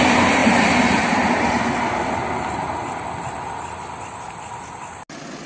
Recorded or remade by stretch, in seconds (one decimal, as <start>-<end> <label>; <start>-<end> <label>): 0.0-5.5 recorded